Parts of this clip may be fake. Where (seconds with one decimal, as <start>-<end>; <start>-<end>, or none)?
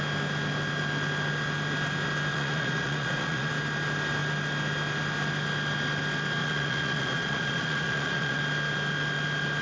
2.3-3.5; 6.4-8.4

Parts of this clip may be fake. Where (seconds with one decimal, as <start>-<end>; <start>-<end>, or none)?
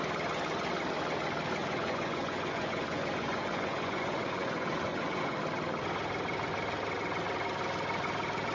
1.6-5.4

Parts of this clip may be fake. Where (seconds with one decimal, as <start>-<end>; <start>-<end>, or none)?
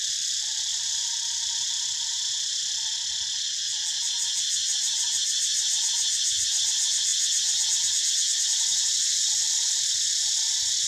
0.7-2.6; 4.6-5.8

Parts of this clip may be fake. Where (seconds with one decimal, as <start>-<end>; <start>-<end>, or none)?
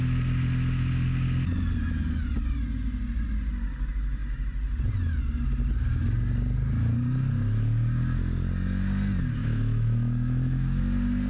9.4-10.8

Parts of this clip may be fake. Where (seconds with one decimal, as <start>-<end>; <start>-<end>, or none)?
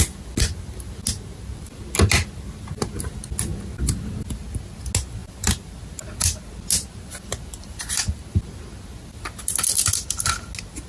none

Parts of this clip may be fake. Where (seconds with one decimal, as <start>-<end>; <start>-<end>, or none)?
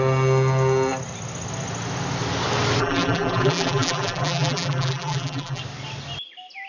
2.8-5.6